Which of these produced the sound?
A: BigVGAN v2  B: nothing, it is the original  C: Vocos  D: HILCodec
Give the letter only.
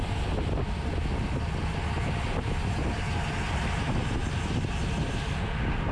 B